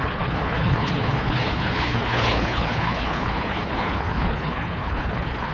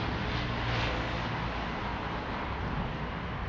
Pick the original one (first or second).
second